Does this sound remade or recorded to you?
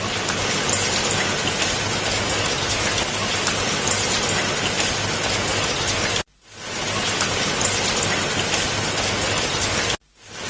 recorded